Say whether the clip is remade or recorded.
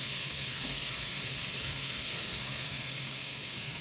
remade